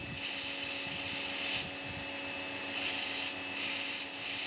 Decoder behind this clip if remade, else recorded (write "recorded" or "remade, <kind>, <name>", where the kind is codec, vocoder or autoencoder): recorded